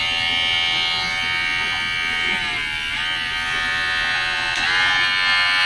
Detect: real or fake real